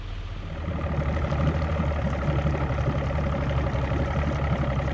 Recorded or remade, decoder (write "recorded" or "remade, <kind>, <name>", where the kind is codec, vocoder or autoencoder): recorded